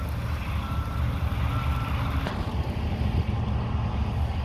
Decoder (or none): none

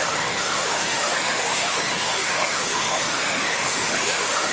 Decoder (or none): autoencoder, DAC-VAE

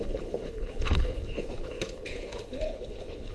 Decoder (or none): codec, HILCodec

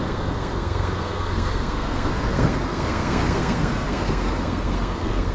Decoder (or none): codec, SNAC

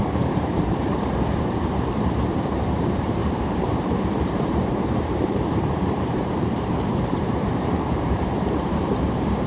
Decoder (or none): vocoder, BigVGAN v2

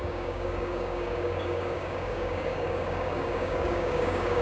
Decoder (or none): codec, DAC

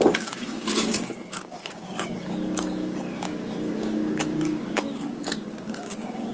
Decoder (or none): codec, DAC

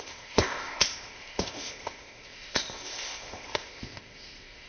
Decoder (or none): codec, ZipCodec